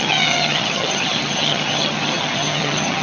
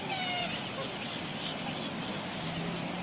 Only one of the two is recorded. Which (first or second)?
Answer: second